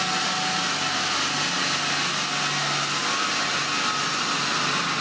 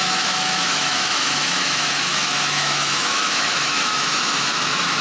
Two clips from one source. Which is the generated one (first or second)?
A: second